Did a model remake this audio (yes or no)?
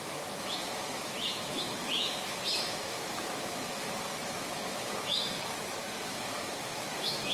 yes